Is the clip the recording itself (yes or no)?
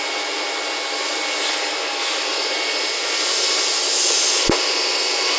yes